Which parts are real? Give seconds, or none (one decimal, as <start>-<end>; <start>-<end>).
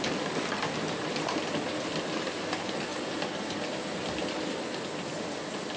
0.0-5.8